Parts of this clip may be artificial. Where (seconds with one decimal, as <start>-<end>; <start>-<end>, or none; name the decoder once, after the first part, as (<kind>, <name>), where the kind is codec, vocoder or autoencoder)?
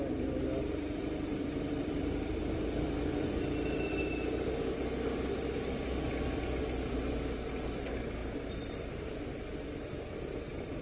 1.0-3.3 (vocoder, BigVGAN v2)